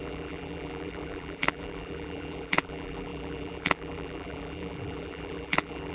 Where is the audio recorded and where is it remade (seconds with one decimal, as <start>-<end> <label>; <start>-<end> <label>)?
0.0-5.9 remade